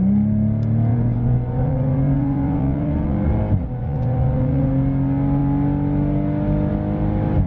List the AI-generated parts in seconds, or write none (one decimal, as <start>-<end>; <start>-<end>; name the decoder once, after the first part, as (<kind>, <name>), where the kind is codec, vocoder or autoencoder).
0.9-3.4 (vocoder, Vocos); 3.8-4.7